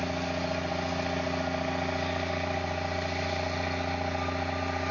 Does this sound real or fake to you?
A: real